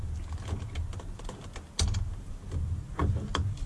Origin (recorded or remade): recorded